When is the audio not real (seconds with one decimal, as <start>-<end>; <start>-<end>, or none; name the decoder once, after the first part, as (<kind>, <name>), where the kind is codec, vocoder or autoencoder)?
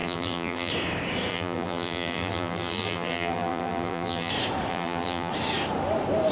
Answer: 0.0-0.7 (vocoder, BigVGAN v2); 1.3-4.3; 4.7-5.3